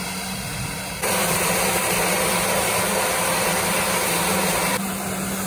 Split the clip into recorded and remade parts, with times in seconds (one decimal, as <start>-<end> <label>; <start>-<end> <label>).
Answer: 0.0-0.5 recorded; 0.5-3.8 remade; 3.8-5.5 recorded